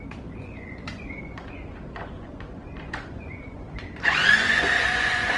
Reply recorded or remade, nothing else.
remade